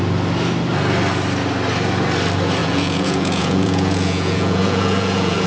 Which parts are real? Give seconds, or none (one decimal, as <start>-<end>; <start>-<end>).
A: 0.0-2.6